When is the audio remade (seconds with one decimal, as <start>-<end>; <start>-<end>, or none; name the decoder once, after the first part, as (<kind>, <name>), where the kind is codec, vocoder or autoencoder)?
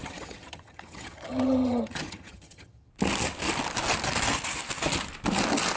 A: 0.0-2.9 (vocoder, HiFi-GAN)